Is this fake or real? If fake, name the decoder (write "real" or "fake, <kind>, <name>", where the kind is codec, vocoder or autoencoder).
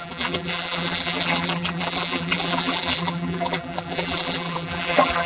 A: fake, vocoder, BigVGAN v2